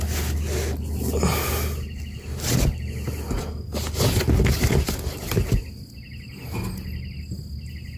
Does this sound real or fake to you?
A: real